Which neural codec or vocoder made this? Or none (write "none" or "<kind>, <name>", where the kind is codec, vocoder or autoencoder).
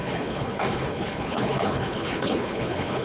codec, HILCodec